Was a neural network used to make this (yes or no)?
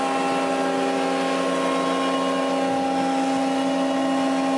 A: no